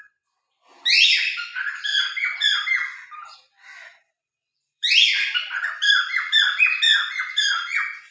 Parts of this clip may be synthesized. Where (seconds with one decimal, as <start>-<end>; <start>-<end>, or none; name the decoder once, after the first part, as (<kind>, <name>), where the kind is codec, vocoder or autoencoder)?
1.9-6.4 (vocoder, BigVGAN v2)